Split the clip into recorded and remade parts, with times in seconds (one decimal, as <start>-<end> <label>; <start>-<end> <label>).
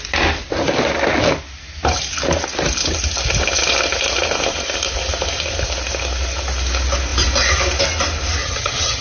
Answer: 0.0-8.4 recorded; 8.4-9.0 remade